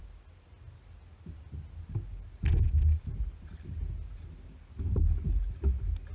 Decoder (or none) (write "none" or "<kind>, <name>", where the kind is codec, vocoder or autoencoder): none